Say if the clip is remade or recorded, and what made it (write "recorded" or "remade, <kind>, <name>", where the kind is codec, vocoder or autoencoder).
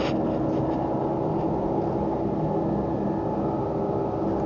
recorded